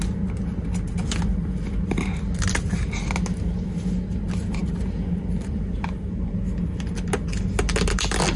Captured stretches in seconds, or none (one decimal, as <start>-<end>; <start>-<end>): 0.0-8.4